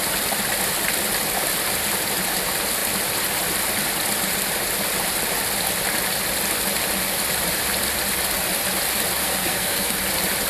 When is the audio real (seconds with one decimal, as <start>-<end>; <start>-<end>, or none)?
0.0-9.2; 10.0-10.5

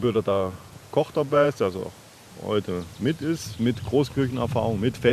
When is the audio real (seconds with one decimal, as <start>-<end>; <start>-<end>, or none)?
1.8-5.1

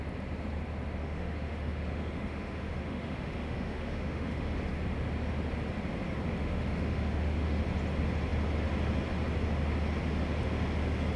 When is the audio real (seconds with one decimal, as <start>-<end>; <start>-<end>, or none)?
0.0-1.0; 4.5-6.4; 7.6-11.2

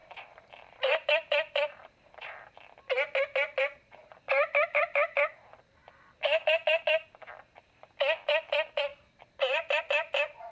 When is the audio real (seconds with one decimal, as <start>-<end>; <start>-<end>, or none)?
2.1-4.0; 5.3-8.9; 9.8-10.5

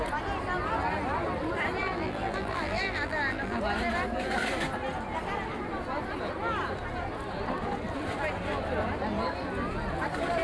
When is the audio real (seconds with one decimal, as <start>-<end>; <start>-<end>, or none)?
0.0-1.8; 3.6-10.4

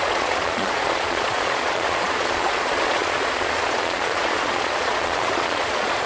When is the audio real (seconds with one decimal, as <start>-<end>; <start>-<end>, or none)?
none

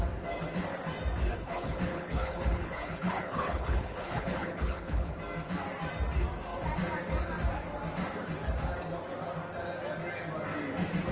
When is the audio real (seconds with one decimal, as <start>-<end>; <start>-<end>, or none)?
0.0-1.3; 5.1-11.1